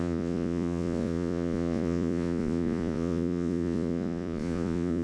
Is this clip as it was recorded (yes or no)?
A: no